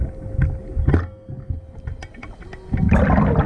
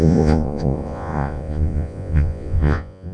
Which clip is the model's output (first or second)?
second